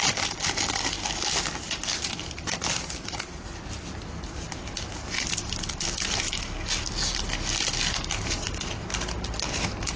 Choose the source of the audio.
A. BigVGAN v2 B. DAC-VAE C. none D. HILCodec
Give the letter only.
C